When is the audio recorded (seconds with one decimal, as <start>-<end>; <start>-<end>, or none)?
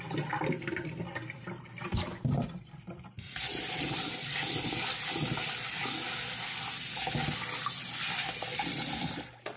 5.8-8.0